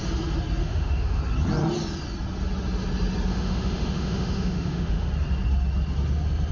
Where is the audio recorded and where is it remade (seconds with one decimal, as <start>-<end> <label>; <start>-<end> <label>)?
0.0-0.6 recorded; 0.6-1.2 remade; 1.2-3.3 recorded; 3.3-5.1 remade; 5.1-6.5 recorded